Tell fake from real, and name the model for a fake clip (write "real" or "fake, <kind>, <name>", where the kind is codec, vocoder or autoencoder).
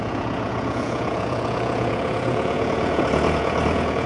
fake, vocoder, Vocos